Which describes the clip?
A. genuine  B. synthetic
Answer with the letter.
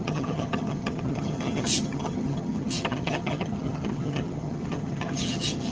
B